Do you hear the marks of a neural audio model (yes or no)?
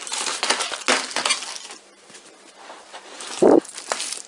no